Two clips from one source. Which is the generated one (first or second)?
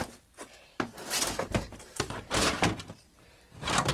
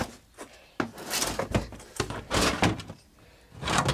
first